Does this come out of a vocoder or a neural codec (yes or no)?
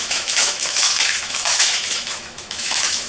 yes